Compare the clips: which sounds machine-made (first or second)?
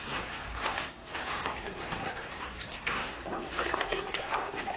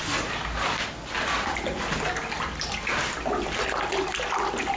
first